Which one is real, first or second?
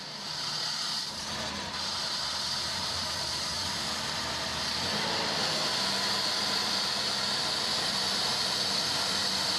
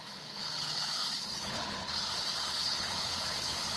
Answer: first